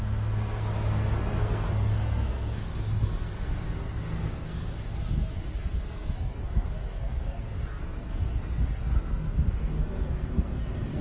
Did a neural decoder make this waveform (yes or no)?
yes